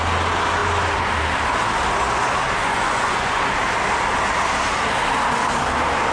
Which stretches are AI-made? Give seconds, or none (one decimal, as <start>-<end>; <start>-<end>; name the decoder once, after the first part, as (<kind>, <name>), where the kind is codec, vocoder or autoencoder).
2.6-3.4 (vocoder, Vocos)